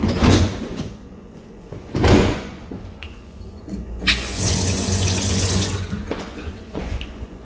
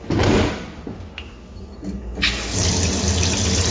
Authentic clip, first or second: second